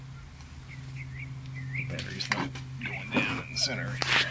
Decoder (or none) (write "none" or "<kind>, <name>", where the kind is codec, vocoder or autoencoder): none